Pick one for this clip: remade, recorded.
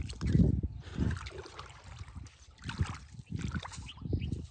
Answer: recorded